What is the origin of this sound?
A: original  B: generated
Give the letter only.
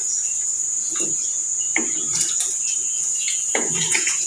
B